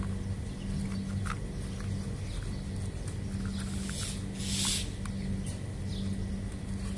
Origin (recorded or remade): recorded